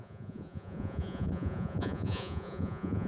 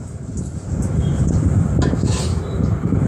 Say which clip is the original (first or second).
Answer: second